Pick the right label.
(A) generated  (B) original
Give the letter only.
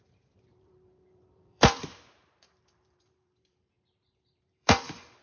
A